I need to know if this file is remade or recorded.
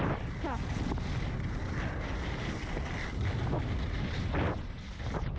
recorded